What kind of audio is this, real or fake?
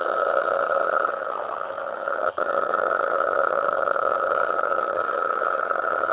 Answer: fake